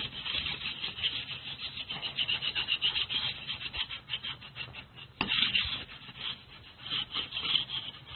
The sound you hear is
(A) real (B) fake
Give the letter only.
A